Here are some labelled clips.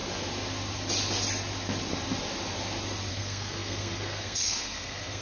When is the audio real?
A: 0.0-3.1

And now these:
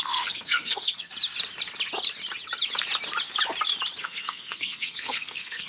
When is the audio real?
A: 1.1-4.0

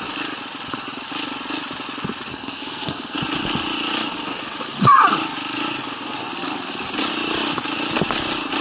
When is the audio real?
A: 0.0-2.3; 3.2-8.6

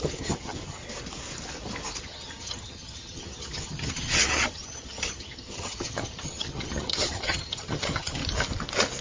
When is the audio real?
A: 0.8-2.0; 8.2-9.0

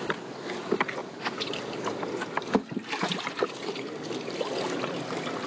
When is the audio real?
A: 0.0-5.5

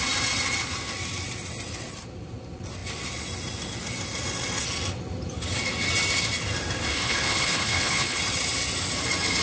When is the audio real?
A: 0.0-6.9; 8.2-9.4